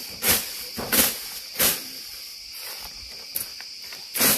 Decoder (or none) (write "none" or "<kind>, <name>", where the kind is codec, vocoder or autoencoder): none